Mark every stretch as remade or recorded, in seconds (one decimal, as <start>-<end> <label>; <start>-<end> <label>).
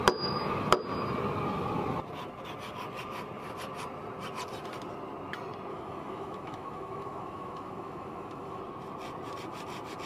0.0-5.7 recorded; 5.7-8.6 remade; 8.6-10.1 recorded